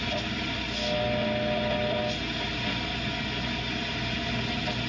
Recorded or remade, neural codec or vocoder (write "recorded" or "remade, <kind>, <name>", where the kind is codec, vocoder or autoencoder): recorded